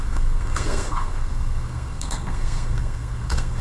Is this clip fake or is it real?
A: fake